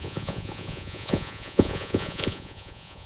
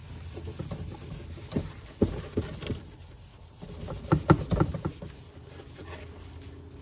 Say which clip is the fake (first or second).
first